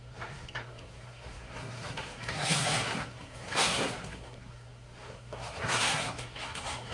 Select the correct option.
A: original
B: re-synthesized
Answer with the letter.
B